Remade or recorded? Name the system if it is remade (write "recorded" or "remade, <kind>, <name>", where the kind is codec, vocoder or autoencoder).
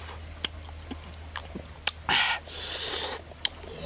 recorded